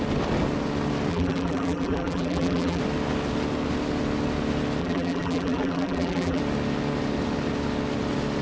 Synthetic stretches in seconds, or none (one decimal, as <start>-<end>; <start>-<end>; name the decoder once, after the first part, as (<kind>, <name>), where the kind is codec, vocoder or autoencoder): 1.1-2.8 (vocoder, BigVGAN v2); 4.8-6.4